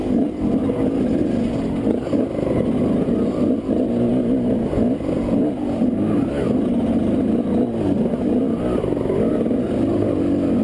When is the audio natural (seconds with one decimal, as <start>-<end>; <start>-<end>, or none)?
0.0-10.6